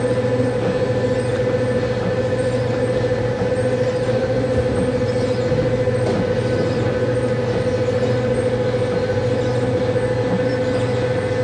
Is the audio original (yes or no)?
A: yes